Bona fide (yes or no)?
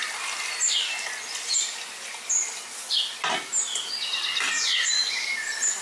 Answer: yes